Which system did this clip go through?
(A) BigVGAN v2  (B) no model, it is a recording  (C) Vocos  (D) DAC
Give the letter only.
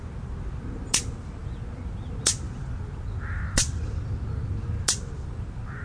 B